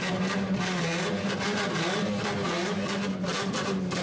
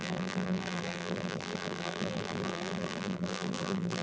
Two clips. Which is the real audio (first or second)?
first